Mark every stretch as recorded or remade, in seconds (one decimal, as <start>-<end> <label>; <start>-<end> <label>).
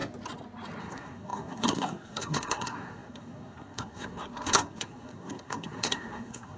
0.0-0.8 recorded; 0.8-6.6 remade